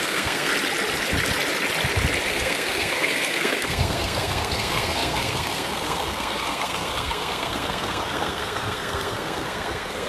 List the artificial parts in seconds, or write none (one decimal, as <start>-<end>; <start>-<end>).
0.0-0.5; 2.3-10.1